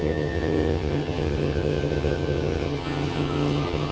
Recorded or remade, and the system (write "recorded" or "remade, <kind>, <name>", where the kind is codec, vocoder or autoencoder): remade, vocoder, HiFi-GAN